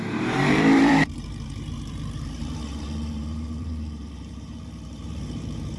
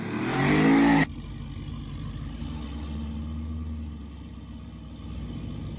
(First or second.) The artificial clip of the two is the first